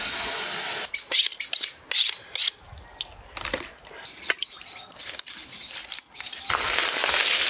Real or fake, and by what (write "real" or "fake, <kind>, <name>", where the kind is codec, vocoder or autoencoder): real